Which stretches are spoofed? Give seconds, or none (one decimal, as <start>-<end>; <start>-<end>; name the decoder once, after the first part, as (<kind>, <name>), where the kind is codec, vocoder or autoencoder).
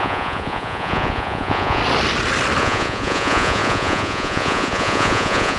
0.0-1.8 (vocoder, Vocos); 2.6-5.6